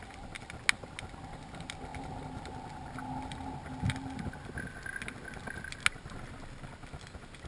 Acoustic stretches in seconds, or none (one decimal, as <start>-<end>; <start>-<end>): 0.0-7.5